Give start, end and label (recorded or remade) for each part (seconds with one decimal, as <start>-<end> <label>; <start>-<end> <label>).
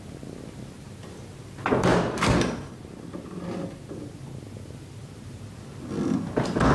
0.0-1.9 recorded; 1.9-3.8 remade; 3.8-6.7 recorded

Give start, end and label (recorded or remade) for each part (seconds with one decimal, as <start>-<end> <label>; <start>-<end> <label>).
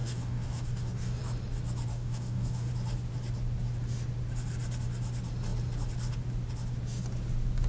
0.0-1.2 remade; 1.2-1.9 recorded; 1.9-2.7 remade; 2.7-7.7 recorded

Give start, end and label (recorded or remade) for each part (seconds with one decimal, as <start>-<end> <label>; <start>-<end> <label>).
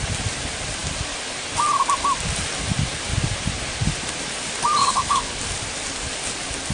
0.0-4.8 recorded; 4.8-5.4 remade; 5.4-6.7 recorded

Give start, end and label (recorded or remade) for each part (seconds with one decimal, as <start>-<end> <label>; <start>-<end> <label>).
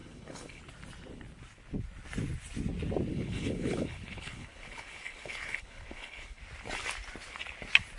0.0-0.6 remade; 0.6-3.1 recorded; 3.1-6.4 remade; 6.4-8.0 recorded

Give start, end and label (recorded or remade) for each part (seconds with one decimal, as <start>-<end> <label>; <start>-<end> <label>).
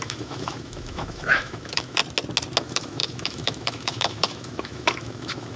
0.0-2.0 remade; 2.0-2.6 recorded; 2.6-5.6 remade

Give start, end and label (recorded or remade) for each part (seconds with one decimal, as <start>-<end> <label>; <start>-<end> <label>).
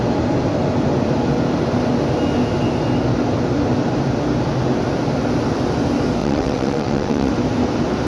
0.0-6.2 recorded; 6.2-7.3 remade; 7.3-8.1 recorded